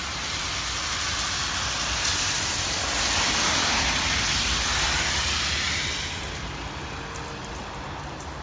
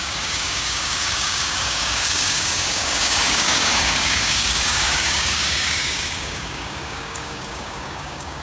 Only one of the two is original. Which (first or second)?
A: first